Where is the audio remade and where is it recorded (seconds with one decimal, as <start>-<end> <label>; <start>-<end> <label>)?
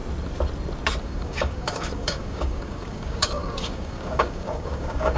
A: 0.0-1.0 recorded; 1.0-5.2 remade